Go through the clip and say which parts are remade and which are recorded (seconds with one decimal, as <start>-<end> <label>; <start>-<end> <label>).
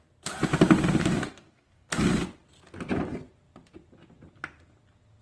0.0-1.0 recorded; 1.0-1.9 remade; 1.9-5.2 recorded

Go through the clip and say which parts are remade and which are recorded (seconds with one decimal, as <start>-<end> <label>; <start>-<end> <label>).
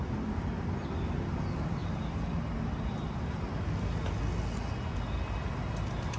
0.0-6.2 recorded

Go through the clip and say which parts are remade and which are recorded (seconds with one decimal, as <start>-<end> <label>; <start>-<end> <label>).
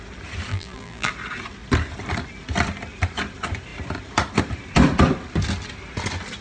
0.0-0.5 recorded; 0.5-1.1 remade; 1.1-6.4 recorded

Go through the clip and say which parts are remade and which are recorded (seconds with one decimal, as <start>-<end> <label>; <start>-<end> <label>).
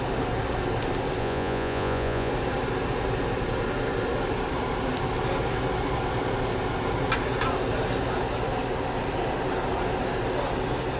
0.0-1.2 recorded; 1.2-2.3 remade; 2.3-11.0 recorded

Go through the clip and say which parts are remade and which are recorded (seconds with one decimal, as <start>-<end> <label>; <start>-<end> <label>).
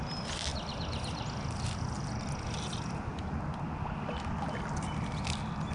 0.0-5.7 recorded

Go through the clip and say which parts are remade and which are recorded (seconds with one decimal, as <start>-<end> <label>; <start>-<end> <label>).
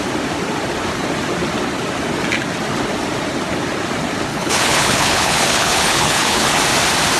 0.0-4.3 recorded; 4.3-6.6 remade; 6.6-7.2 recorded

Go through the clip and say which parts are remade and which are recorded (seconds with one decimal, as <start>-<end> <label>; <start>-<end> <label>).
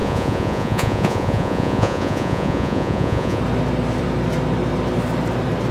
0.0-3.4 remade; 3.4-5.7 recorded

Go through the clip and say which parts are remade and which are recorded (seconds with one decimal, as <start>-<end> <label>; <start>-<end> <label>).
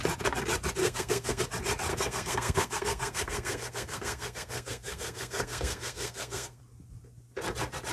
0.0-0.8 recorded; 0.8-1.4 remade; 1.4-1.9 recorded; 1.9-6.6 remade; 6.6-7.9 recorded